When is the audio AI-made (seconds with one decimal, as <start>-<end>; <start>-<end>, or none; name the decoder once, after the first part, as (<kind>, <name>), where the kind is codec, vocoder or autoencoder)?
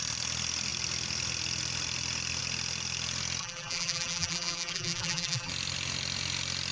3.4-5.5 (vocoder, BigVGAN v2)